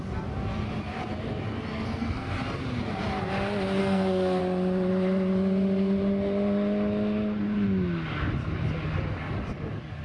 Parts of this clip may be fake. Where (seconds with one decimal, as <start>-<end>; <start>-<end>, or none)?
1.7-2.3; 3.8-4.4